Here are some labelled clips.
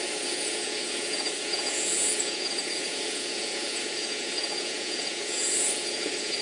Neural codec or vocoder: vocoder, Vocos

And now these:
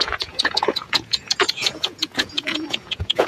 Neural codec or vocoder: vocoder, Vocos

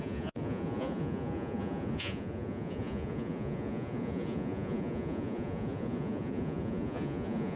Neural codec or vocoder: vocoder, Vocos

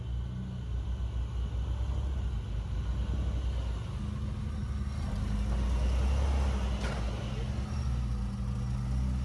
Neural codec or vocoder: none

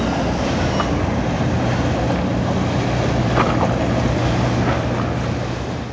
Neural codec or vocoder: none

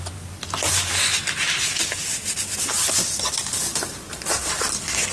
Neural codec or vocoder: none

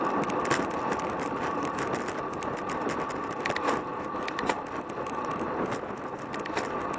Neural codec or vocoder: none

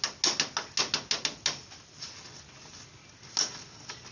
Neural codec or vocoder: none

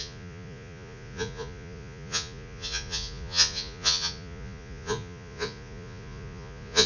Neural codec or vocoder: vocoder, Vocos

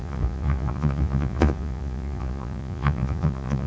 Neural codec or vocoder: vocoder, Vocos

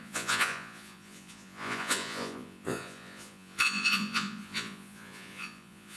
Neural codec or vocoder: vocoder, Vocos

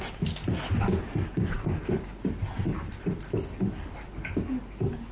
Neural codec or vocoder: none